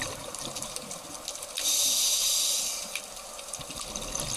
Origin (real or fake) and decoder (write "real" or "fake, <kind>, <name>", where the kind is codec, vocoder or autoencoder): real